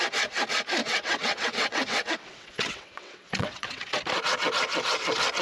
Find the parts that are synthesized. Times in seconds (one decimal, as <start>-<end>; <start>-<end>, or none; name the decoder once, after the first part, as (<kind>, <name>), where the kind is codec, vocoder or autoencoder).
0.8-4.0 (vocoder, WaveNeXt)